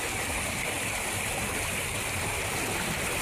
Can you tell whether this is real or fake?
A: fake